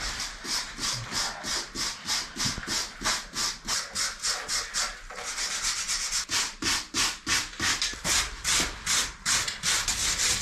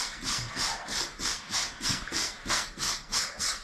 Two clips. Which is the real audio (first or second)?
first